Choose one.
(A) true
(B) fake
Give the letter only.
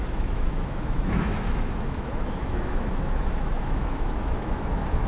B